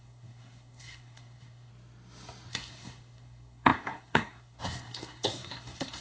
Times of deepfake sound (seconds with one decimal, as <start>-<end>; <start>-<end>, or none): 0.0-1.7; 2.5-6.0